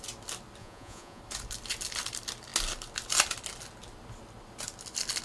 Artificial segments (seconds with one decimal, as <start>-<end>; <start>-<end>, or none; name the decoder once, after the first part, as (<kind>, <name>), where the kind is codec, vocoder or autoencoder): 0.6-1.2 (vocoder, Vocos)